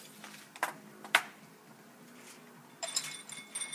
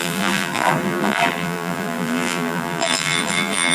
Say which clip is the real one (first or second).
first